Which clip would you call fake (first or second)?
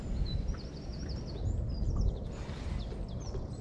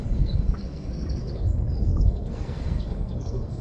second